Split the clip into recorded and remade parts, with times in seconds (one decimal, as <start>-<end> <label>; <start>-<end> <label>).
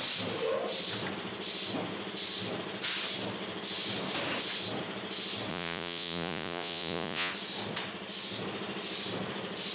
0.0-5.5 recorded; 5.5-7.3 remade; 7.3-9.7 recorded